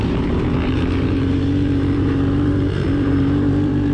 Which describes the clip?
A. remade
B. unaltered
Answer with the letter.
A